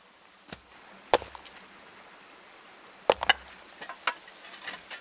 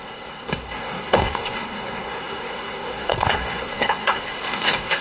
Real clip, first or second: first